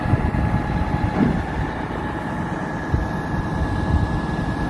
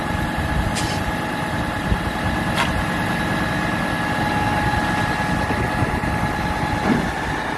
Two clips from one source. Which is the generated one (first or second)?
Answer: first